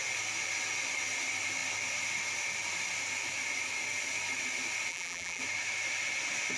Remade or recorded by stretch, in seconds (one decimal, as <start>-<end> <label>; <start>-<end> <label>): 0.0-4.9 recorded; 4.9-5.4 remade; 5.4-6.6 recorded